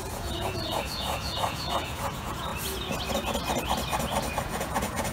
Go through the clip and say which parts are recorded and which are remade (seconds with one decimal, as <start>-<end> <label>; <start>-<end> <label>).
0.0-2.5 remade; 2.5-4.4 recorded; 4.4-5.1 remade